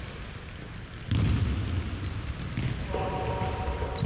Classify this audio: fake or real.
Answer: real